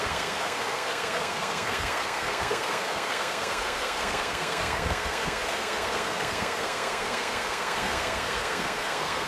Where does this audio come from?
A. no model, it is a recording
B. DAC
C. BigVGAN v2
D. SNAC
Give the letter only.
D